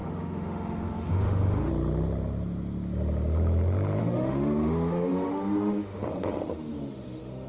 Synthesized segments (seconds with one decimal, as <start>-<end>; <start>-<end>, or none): 0.0-1.7; 4.0-7.5